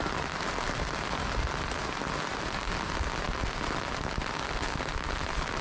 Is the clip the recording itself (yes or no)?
yes